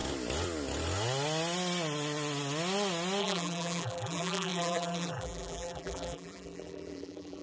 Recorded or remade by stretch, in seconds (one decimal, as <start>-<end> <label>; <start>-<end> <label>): 0.0-3.2 recorded; 3.2-7.4 remade

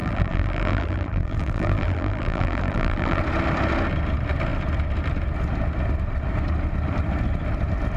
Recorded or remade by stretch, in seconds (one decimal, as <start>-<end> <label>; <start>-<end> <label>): 0.0-3.2 remade; 3.2-8.0 recorded

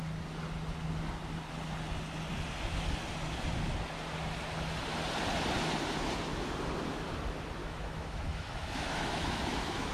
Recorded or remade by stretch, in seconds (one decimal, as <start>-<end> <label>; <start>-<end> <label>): 0.0-7.6 recorded; 7.6-9.9 remade

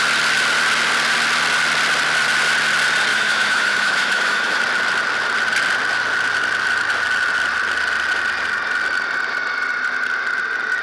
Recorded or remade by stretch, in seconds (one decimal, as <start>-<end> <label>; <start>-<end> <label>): 0.0-3.1 recorded; 3.1-4.6 remade; 4.6-10.8 recorded